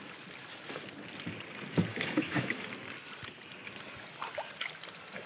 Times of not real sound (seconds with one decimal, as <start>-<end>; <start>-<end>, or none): 1.9-2.6